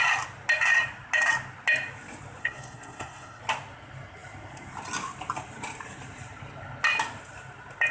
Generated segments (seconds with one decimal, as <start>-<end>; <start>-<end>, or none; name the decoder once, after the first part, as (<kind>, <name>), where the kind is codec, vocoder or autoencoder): 2.4-3.4 (codec, SNAC)